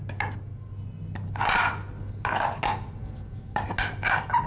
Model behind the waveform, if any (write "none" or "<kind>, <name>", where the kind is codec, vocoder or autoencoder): none